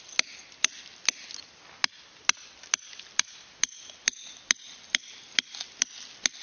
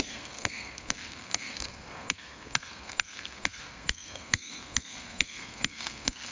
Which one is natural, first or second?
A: first